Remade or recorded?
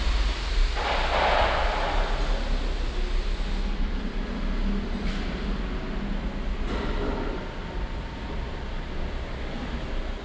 recorded